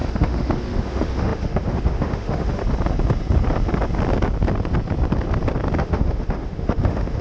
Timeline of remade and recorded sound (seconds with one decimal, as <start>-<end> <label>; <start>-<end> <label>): 0.0-2.6 remade; 2.6-5.8 recorded; 5.8-7.2 remade